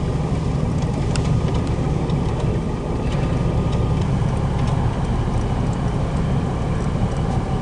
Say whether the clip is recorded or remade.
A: remade